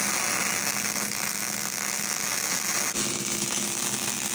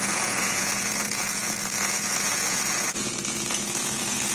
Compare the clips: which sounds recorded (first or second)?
first